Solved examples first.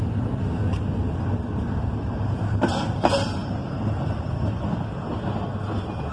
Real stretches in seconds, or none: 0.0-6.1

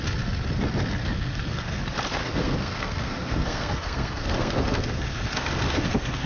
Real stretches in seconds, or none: 0.0-1.0; 1.8-2.2

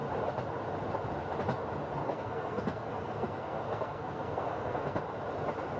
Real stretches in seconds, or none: 0.0-2.0; 5.0-5.8

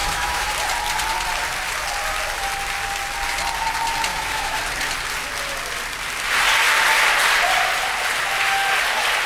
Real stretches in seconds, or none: 0.5-4.1; 4.6-9.3